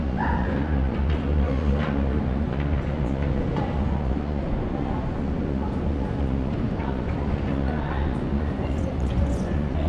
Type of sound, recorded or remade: remade